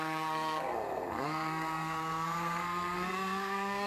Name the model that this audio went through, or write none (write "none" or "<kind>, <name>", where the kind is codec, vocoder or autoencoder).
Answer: codec, SNAC